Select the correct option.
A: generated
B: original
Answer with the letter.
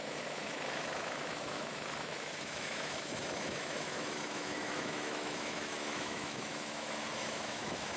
A